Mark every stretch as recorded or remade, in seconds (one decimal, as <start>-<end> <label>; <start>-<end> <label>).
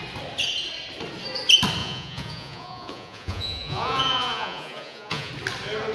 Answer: 0.0-1.8 recorded; 1.8-5.3 remade; 5.3-5.9 recorded